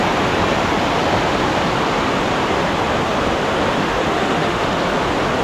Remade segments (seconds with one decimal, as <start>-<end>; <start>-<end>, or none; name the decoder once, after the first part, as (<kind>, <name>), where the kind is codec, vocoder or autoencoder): 3.8-4.8 (autoencoder, DAC-VAE)